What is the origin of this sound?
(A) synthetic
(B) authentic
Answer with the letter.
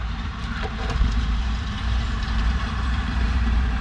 A